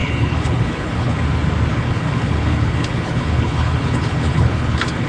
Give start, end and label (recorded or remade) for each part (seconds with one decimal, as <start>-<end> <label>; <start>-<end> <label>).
0.0-1.2 remade; 1.2-1.7 recorded; 1.7-5.1 remade